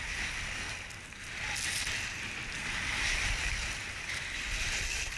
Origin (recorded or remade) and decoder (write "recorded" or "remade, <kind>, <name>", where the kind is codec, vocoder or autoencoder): recorded